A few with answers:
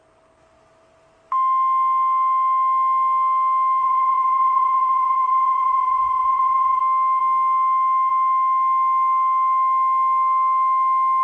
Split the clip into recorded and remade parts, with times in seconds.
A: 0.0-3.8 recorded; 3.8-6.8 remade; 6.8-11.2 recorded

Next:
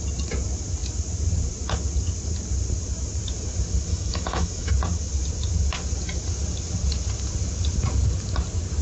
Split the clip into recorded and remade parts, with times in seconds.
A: 0.0-3.9 recorded; 3.9-4.7 remade; 4.7-8.8 recorded

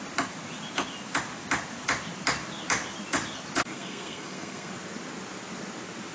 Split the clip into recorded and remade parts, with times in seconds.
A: 0.0-3.7 recorded; 3.7-4.7 remade; 4.7-6.1 recorded